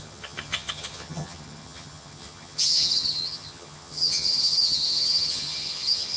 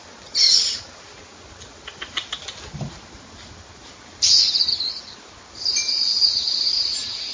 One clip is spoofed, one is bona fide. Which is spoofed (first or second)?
first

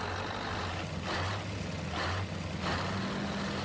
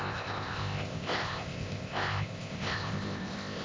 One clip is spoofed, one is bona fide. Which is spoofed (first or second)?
second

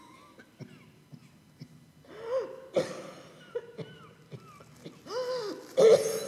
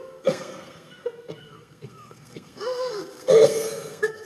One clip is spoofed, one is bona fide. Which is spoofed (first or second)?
second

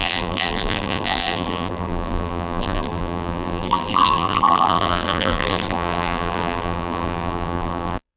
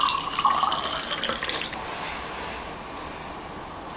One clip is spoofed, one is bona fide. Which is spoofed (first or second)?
first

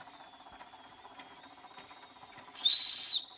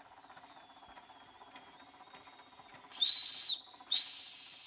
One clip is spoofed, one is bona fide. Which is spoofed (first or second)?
first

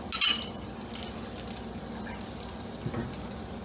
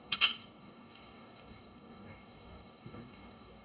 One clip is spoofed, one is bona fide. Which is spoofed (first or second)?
second